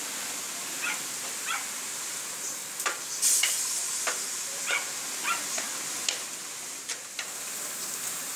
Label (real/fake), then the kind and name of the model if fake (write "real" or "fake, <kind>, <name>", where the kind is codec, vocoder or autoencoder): real